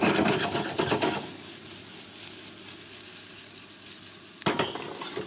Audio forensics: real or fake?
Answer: real